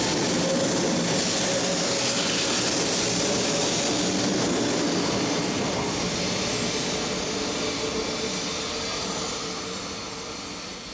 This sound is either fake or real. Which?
real